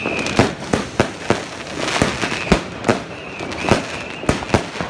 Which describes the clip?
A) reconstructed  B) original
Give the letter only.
B